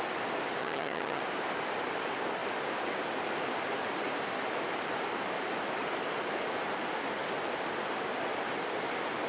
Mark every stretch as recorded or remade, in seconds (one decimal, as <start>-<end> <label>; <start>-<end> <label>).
0.0-0.6 recorded; 0.6-1.2 remade; 1.2-9.3 recorded